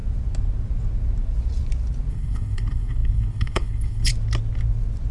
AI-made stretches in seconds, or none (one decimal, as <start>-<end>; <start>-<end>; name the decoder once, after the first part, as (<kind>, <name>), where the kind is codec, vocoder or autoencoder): 2.1-4.1 (codec, HILCodec)